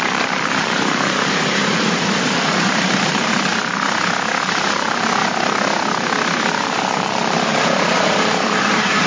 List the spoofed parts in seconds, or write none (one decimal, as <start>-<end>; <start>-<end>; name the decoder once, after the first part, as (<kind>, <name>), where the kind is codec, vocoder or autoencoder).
0.0-3.5 (vocoder, BigVGAN v2); 4.4-5.2; 6.5-9.1